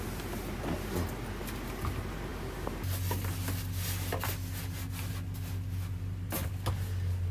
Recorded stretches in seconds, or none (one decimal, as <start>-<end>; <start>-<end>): 0.0-7.3